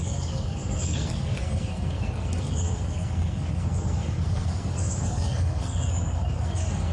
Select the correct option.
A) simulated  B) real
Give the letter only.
A